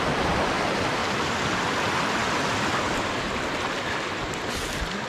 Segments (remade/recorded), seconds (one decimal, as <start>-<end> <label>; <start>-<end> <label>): 0.0-5.1 recorded